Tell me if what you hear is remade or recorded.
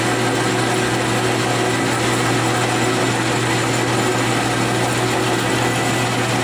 recorded